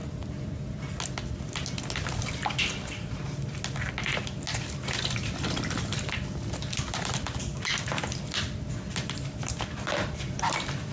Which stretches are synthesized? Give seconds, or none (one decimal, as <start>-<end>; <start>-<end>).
none